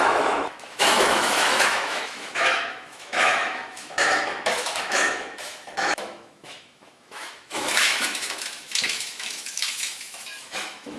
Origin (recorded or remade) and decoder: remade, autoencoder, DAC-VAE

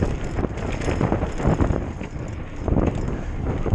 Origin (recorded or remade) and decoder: recorded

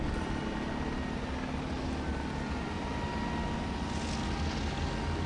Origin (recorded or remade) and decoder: recorded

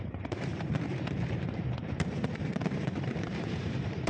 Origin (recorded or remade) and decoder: remade, vocoder, BigVGAN v2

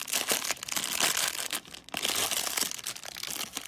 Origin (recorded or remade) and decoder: recorded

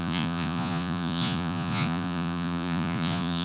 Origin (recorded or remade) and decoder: remade, vocoder, Vocos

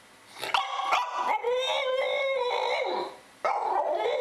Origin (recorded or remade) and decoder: recorded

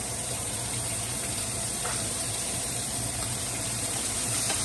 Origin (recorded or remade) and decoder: remade, vocoder, BigVGAN v2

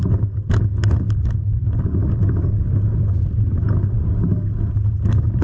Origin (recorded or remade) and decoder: recorded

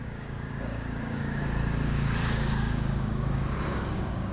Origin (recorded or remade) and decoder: remade, codec, DAC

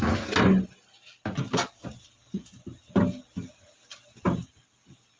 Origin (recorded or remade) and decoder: recorded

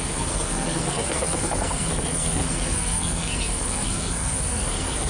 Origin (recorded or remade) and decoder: remade, codec, SNAC